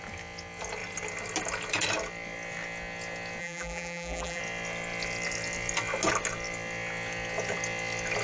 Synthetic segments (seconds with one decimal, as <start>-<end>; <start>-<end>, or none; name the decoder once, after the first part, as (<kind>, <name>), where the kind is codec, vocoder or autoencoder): 3.4-4.4 (vocoder, BigVGAN v2)